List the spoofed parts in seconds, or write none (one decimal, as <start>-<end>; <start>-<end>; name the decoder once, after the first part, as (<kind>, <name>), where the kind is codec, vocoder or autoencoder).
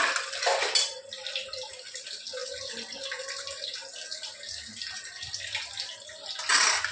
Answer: none